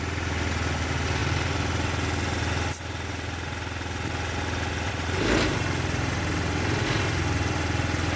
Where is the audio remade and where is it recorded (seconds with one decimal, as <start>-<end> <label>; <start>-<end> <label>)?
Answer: 0.0-8.2 recorded